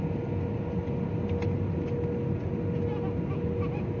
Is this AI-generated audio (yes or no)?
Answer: no